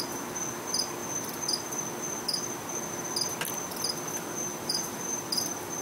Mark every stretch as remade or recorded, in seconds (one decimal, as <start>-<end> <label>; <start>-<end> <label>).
0.0-4.5 recorded; 4.5-5.2 remade; 5.2-5.8 recorded